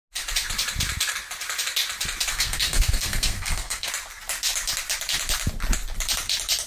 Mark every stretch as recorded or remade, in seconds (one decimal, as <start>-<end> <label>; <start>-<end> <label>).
0.0-2.3 recorded; 2.3-3.9 remade; 3.9-6.7 recorded